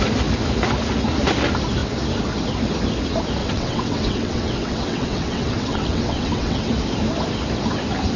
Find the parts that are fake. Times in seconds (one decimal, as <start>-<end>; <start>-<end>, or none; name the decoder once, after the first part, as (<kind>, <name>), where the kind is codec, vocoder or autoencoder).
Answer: 3.4-6.7 (vocoder, WaveNeXt)